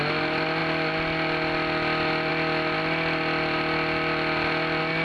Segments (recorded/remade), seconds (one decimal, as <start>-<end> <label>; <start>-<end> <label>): 0.0-5.0 recorded